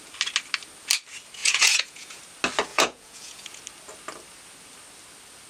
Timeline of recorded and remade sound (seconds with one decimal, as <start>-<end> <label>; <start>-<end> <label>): 0.0-1.4 recorded; 1.4-2.2 remade; 2.2-2.7 recorded; 2.7-3.6 remade; 3.6-5.5 recorded